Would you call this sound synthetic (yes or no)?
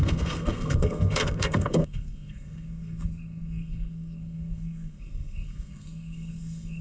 yes